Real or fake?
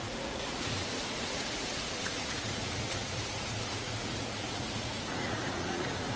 fake